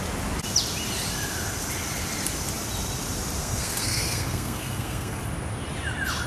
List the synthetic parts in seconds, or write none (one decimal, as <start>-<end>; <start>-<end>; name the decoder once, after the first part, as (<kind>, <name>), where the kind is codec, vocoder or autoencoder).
3.4-5.2 (codec, SNAC)